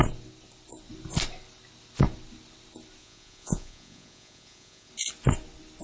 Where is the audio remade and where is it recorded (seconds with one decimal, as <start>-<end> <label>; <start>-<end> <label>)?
0.0-3.0 recorded; 3.0-4.9 remade; 4.9-5.8 recorded